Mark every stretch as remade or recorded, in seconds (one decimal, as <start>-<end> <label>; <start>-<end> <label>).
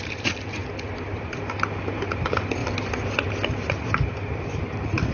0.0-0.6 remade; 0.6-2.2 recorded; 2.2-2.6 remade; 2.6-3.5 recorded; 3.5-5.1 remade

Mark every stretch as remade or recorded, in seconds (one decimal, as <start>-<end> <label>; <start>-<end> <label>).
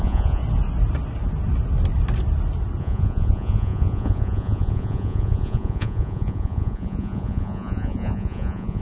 0.0-0.4 remade; 0.4-2.8 recorded; 2.8-8.8 remade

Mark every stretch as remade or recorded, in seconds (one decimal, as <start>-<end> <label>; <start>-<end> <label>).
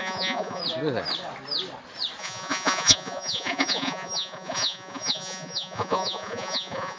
0.0-0.6 remade; 0.6-2.2 recorded; 2.2-7.0 remade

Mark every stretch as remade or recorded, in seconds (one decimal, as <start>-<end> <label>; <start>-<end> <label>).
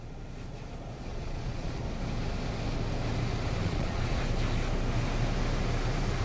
0.0-1.1 recorded; 1.1-1.8 remade; 1.8-3.6 recorded; 3.6-4.2 remade; 4.2-6.2 recorded